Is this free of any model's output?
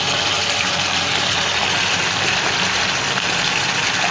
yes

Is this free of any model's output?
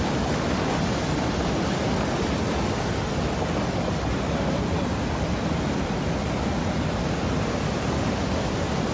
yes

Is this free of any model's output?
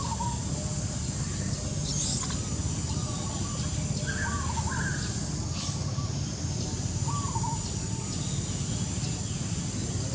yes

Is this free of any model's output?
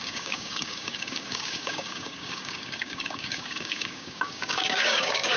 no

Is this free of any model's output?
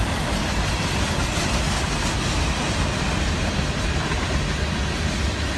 yes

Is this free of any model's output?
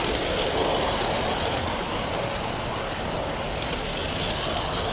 yes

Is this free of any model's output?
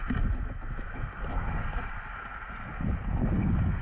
yes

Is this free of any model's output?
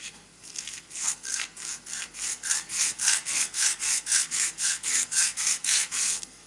no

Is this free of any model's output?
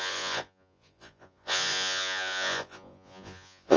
no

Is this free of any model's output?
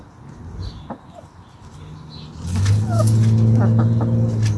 yes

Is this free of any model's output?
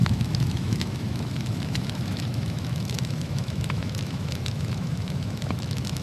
no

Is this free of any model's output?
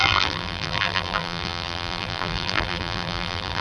no